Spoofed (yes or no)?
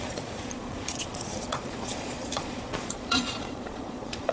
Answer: yes